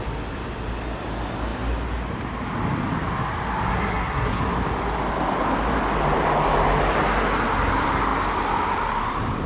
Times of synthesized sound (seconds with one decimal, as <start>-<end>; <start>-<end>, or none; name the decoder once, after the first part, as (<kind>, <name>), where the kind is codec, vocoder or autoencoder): 3.7-4.4 (codec, SNAC)